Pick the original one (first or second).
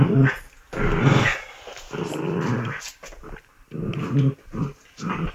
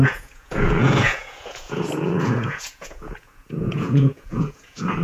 first